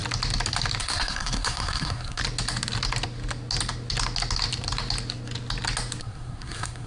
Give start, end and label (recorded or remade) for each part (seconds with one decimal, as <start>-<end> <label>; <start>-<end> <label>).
0.0-0.8 recorded; 0.8-2.2 remade; 2.2-6.0 recorded; 6.0-6.9 remade